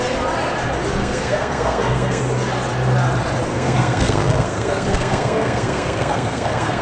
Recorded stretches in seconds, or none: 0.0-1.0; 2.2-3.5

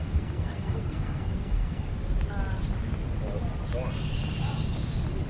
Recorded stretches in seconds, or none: 1.9-5.3

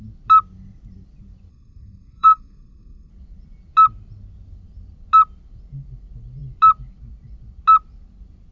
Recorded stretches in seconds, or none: 0.0-1.5; 3.1-8.5

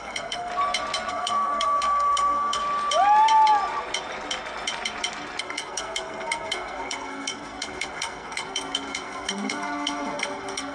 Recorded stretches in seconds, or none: 0.5-1.1; 2.6-5.4

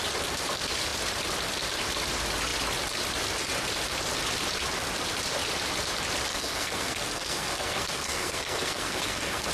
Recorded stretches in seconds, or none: 0.0-6.3

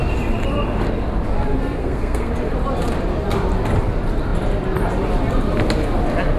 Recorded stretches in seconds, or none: 0.0-1.8; 2.3-6.4

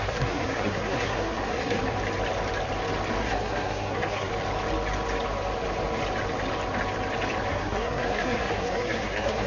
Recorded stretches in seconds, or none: 1.8-3.2; 4.3-7.5